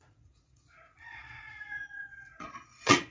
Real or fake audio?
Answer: fake